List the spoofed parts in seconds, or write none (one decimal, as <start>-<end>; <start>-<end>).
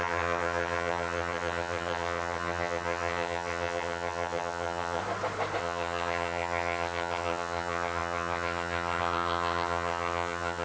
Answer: 0.0-5.0; 5.6-10.6